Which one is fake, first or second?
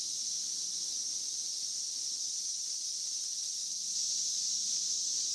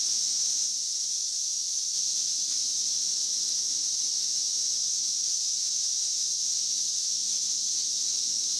second